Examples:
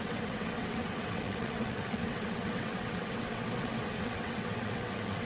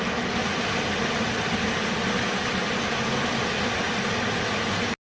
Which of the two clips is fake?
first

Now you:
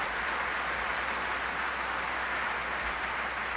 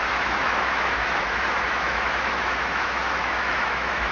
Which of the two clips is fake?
second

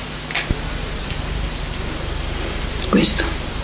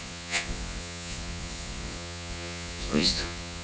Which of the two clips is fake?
second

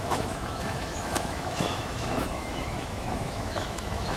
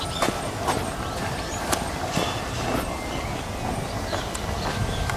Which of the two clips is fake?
first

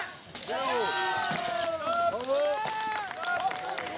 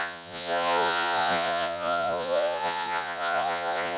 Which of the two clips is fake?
second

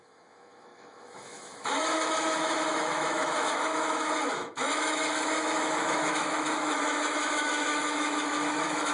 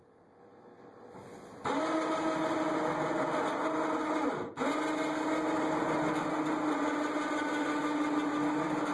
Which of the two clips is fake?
first